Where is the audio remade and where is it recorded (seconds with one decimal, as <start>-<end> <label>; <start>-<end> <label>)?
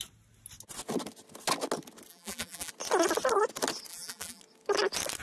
0.0-2.1 recorded; 2.1-2.7 remade; 2.7-3.9 recorded; 3.9-4.4 remade; 4.4-5.2 recorded